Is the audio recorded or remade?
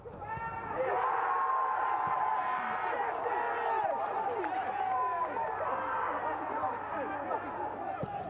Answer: recorded